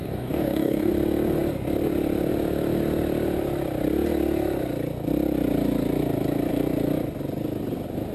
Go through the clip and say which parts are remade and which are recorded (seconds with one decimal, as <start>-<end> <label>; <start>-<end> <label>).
0.0-0.9 remade; 0.9-8.1 recorded